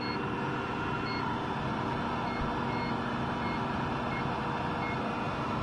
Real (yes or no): yes